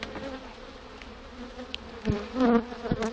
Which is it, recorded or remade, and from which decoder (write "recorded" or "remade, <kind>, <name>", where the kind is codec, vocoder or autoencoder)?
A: recorded